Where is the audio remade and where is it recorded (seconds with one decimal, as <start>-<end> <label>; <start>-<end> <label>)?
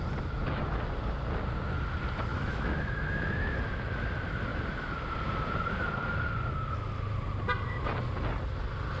0.0-2.3 recorded; 2.3-3.5 remade; 3.5-9.0 recorded